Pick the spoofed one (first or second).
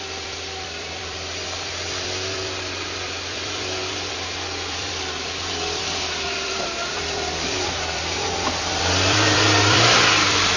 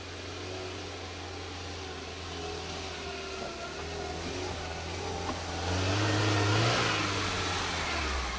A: first